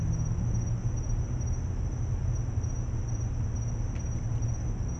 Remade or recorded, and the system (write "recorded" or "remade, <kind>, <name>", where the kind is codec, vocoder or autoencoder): recorded